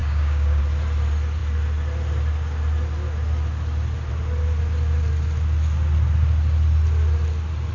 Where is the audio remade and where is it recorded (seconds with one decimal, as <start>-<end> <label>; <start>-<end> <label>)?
0.0-0.6 remade; 0.6-7.7 recorded